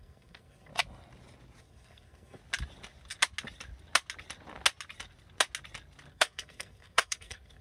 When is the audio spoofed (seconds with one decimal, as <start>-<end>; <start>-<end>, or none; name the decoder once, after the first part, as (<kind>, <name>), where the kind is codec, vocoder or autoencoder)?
0.0-0.7 (codec, SNAC); 1.6-2.4; 6.1-7.6